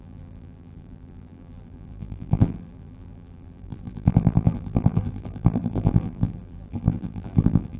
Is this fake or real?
fake